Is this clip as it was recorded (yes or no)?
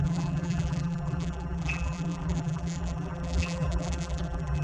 no